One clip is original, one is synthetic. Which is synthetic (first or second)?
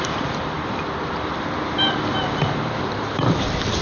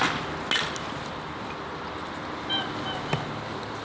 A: first